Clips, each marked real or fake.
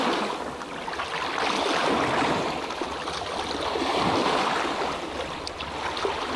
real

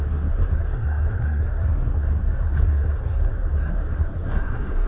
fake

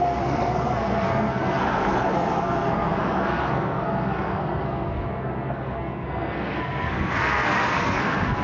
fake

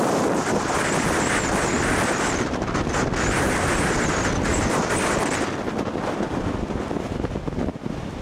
real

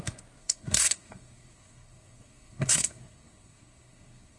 fake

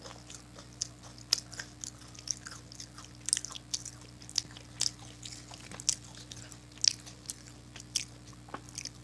real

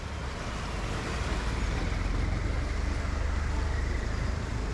real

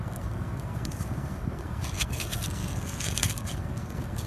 fake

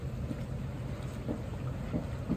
real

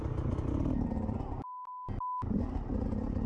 real